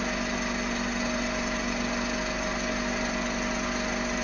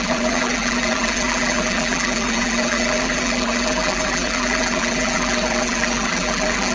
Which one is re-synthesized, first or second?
second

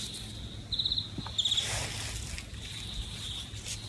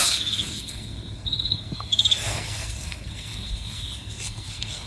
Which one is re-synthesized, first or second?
second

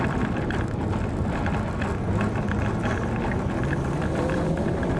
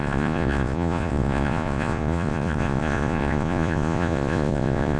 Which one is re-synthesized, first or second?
second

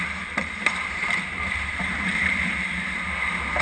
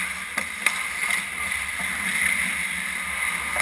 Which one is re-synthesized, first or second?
first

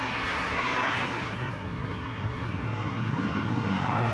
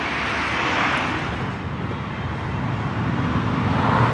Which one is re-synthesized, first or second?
first